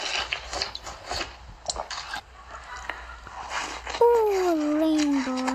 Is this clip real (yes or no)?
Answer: yes